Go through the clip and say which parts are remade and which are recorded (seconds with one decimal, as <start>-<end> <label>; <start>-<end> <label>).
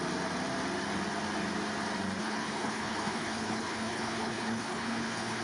0.0-2.2 recorded; 2.2-5.4 remade